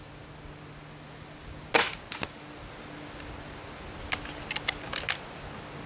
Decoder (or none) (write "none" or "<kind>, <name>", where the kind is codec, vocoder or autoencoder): none